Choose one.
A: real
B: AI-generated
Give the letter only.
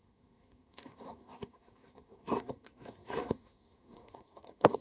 B